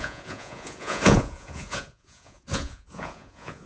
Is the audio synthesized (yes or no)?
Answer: yes